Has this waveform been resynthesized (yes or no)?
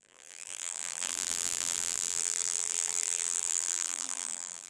yes